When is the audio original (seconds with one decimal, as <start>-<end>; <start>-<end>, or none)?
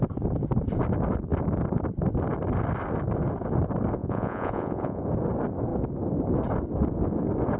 0.0-4.0; 5.0-7.6